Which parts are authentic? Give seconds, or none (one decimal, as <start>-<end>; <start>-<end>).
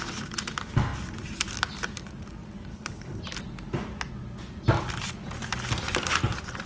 0.0-2.7; 3.2-6.7